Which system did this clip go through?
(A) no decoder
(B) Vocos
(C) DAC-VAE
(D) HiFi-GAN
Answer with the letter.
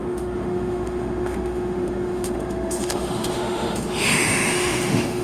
C